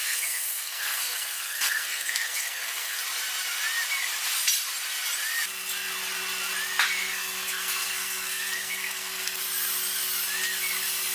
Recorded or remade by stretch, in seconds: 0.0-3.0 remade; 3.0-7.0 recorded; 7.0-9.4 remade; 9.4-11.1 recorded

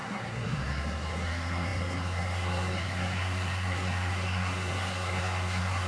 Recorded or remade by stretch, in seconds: 0.0-5.9 remade

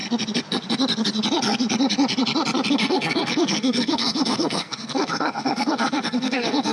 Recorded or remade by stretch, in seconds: 0.0-2.7 recorded; 2.7-6.7 remade

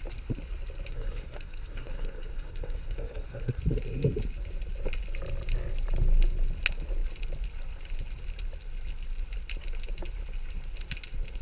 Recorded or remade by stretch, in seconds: 0.0-0.9 recorded; 0.9-3.6 remade; 3.6-11.4 recorded

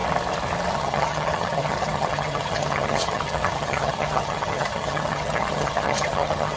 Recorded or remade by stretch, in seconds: 0.0-0.7 recorded; 0.7-6.6 remade

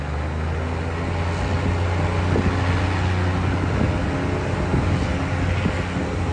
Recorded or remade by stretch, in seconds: 0.0-6.3 recorded

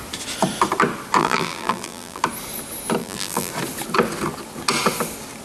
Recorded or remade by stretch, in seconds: 0.0-1.2 recorded; 1.2-2.2 remade; 2.2-3.0 recorded; 3.0-3.5 remade; 3.5-5.4 recorded